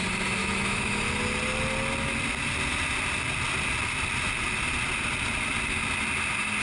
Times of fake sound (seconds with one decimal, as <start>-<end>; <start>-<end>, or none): 0.4-1.0

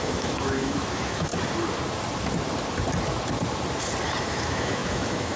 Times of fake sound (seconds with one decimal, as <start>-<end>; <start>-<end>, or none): 0.0-1.3; 4.2-5.4

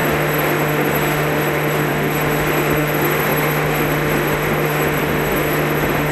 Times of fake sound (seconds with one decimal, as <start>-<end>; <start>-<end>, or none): 0.0-6.1

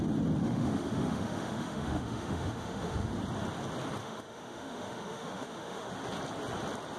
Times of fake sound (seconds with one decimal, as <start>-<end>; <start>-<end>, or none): 0.4-3.1; 4.0-5.9

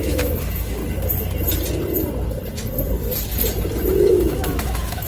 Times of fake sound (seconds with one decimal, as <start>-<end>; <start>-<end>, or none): 0.0-0.8; 3.9-5.1

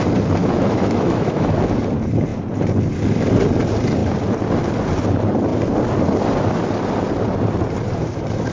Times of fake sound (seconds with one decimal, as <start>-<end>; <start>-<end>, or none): 0.4-1.8